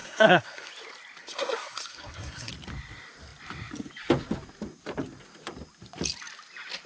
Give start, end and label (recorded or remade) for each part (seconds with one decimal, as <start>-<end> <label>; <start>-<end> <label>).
0.0-0.7 remade; 0.7-1.2 recorded; 1.2-2.5 remade; 2.5-6.9 recorded